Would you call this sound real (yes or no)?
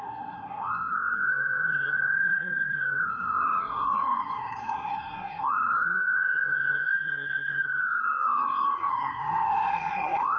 no